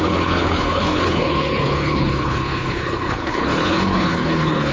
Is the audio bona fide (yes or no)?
no